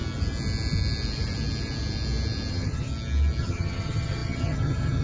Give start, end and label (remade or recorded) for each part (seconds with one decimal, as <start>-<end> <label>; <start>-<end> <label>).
0.0-2.5 recorded; 2.5-2.9 remade; 2.9-3.4 recorded; 3.4-5.0 remade